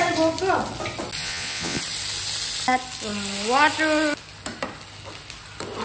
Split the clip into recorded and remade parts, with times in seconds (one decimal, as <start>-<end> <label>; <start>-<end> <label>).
0.0-1.2 recorded; 1.2-1.8 remade; 1.8-5.8 recorded